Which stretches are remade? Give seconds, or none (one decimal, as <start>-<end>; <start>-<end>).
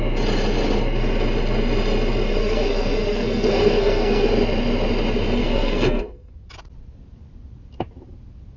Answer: 2.4-4.3; 5.4-6.3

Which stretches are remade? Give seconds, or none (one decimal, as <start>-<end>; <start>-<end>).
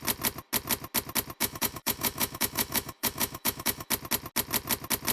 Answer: 1.4-3.9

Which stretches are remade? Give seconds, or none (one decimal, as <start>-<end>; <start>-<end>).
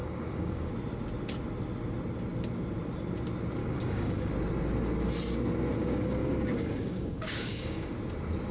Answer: 0.0-0.7; 3.6-4.3; 5.8-7.9